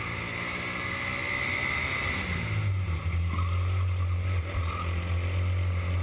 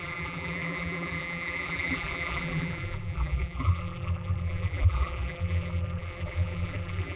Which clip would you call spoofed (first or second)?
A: second